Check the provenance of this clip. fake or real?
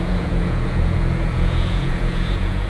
fake